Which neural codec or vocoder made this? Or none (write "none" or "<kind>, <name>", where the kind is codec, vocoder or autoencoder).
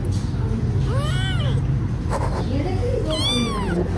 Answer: none